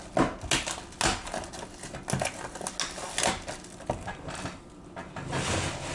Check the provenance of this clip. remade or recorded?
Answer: recorded